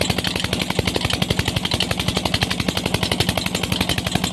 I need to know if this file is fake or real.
real